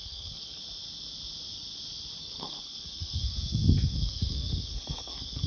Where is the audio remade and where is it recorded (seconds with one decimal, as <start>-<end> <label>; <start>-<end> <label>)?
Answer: 0.0-0.6 remade; 0.6-2.2 recorded; 2.2-5.5 remade